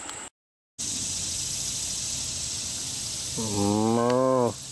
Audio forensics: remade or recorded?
recorded